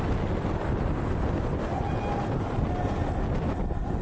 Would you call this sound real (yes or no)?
yes